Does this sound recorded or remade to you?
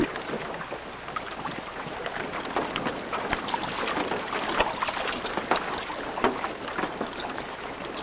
recorded